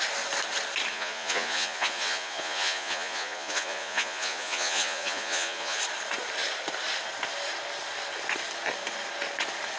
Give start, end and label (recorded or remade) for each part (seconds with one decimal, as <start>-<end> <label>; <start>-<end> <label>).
0.0-0.9 recorded; 0.9-5.8 remade; 5.8-9.8 recorded